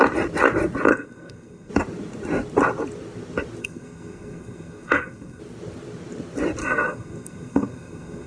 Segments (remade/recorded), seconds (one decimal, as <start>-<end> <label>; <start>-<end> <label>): 0.0-0.9 recorded; 0.9-1.7 remade; 1.7-3.6 recorded; 3.6-5.4 remade; 5.4-6.6 recorded; 6.6-8.3 remade